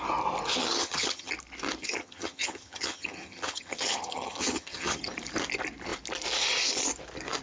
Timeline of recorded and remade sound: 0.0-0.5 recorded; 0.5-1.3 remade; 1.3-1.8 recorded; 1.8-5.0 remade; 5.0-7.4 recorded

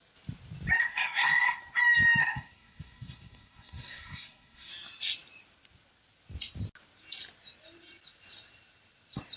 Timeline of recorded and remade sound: 0.0-0.8 recorded; 0.8-1.6 remade; 1.6-2.2 recorded; 2.2-4.7 remade; 4.7-9.4 recorded

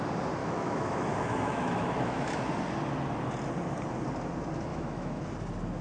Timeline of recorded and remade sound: 0.0-0.4 recorded; 0.4-2.5 remade; 2.5-4.7 recorded; 4.7-5.2 remade; 5.2-5.8 recorded